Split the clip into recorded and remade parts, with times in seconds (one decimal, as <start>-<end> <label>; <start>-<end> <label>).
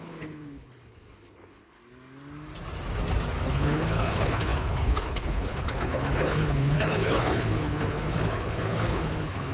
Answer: 0.0-1.8 remade; 1.8-3.5 recorded; 3.5-9.5 remade